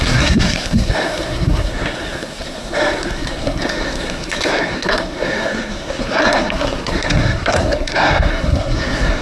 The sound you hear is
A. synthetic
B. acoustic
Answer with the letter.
A